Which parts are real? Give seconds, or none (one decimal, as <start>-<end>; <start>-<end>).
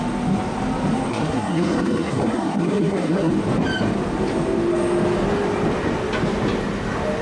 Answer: 0.0-1.1; 3.3-7.2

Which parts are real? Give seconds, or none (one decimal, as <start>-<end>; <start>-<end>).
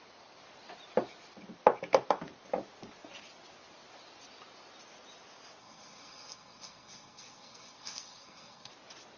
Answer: 0.0-5.6; 8.7-9.2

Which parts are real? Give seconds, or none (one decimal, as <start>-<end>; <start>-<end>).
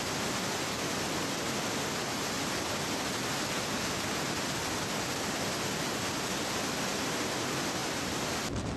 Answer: 0.0-8.8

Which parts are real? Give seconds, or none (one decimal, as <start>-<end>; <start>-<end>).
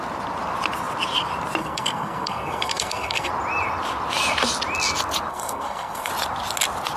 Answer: 0.0-1.6; 3.3-5.3; 6.1-7.0